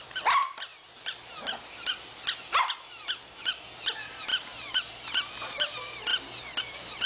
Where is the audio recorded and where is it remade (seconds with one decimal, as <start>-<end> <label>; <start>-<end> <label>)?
0.0-0.7 remade; 0.7-3.4 recorded; 3.4-6.1 remade; 6.1-6.6 recorded; 6.6-7.1 remade